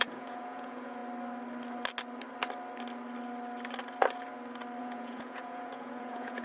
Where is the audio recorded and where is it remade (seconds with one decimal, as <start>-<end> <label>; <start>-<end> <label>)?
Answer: 0.0-1.0 remade; 1.0-4.8 recorded; 4.8-6.4 remade